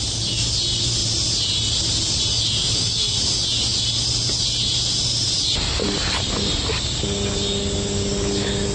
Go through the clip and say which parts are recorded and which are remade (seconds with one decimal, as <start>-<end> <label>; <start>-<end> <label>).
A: 0.0-2.6 recorded; 2.6-3.2 remade; 3.2-8.7 recorded